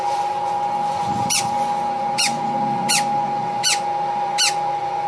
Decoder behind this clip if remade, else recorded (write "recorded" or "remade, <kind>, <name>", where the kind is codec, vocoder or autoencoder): remade, vocoder, Vocos